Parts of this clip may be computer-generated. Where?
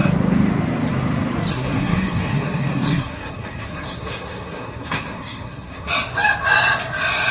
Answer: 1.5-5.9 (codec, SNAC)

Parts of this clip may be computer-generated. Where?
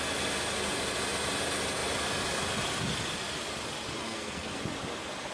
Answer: 4.0-4.6 (codec, SNAC)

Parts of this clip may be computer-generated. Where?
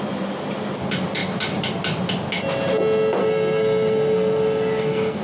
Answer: 3.2-5.2 (codec, SNAC)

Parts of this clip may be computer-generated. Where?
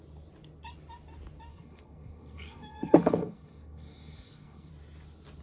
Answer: 1.5-4.7 (codec, SNAC)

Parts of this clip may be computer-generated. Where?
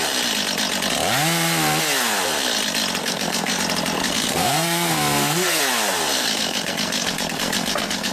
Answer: 3.0-3.6 (codec, SNAC); 4.0-5.6; 6.2-8.1